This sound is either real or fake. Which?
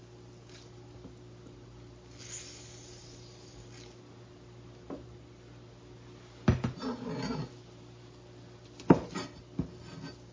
real